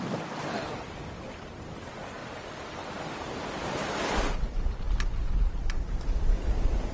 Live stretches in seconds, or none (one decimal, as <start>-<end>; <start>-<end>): 2.2-2.9